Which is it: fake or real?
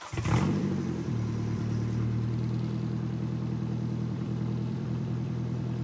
fake